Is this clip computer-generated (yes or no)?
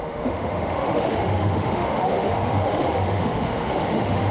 yes